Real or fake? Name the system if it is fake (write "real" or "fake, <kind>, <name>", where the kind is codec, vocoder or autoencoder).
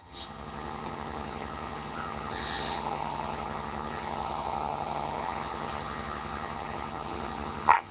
fake, vocoder, HiFi-GAN